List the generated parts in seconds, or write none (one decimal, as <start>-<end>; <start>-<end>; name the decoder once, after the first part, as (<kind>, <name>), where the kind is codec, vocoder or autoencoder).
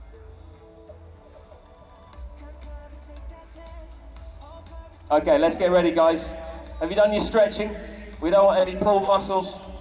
8.6-9.4 (codec, SNAC)